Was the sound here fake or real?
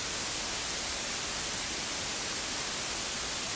real